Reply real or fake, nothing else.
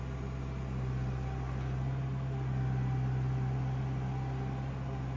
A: real